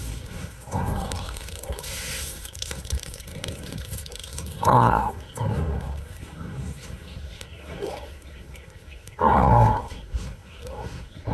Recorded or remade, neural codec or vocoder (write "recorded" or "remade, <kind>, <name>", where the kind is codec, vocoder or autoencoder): remade, codec, SNAC